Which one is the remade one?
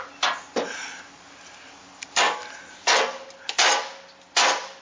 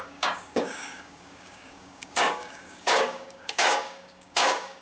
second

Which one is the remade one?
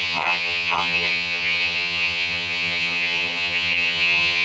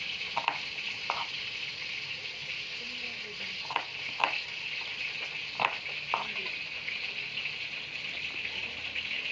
first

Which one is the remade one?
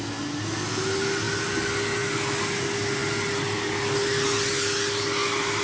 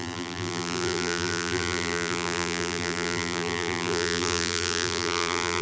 second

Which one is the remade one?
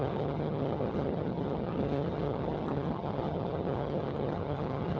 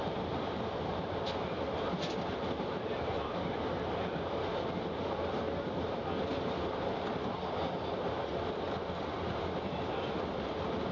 first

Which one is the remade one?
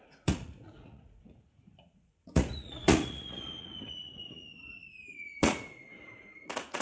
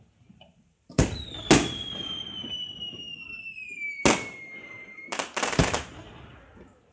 first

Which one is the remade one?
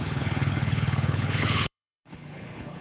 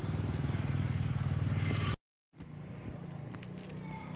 first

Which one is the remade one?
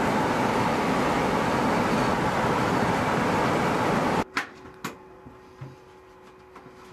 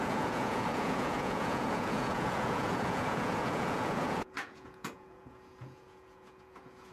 second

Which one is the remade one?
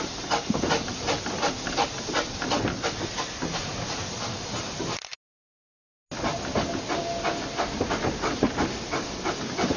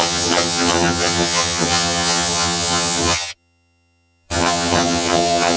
second